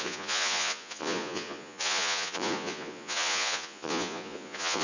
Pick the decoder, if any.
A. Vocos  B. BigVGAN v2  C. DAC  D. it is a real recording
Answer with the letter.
A